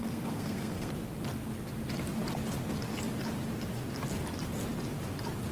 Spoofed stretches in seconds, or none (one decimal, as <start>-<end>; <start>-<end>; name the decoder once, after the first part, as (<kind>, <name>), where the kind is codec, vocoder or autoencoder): 0.0-0.9 (codec, SNAC)